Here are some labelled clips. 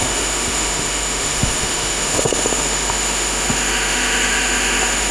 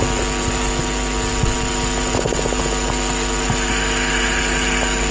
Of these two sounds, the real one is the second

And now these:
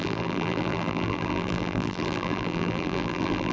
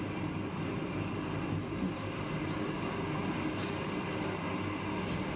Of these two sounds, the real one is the second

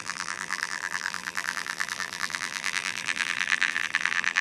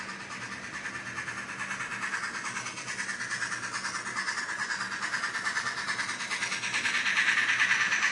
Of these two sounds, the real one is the second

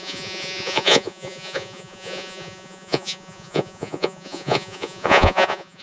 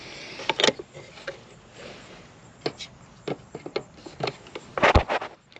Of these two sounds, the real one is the second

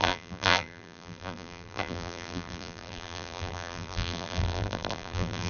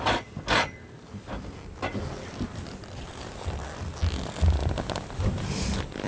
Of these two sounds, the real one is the second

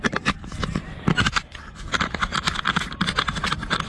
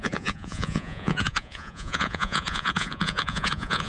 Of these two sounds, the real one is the first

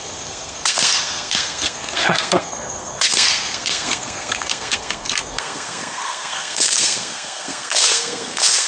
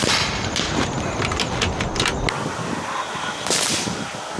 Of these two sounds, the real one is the second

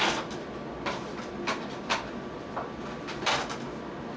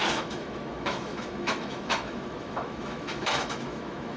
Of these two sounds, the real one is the first